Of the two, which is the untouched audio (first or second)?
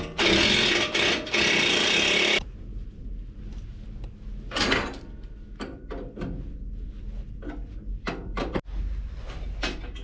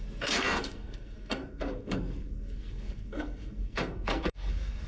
first